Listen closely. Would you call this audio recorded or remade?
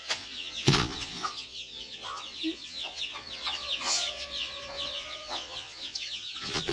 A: remade